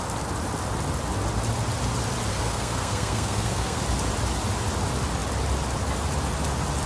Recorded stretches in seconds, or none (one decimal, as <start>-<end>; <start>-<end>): 0.0-2.3; 3.8-6.9

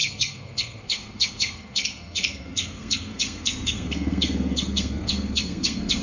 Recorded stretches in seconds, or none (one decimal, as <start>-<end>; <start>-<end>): none

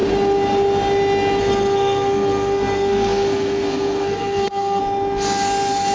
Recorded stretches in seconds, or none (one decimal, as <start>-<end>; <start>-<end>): 0.0-1.4; 4.8-5.9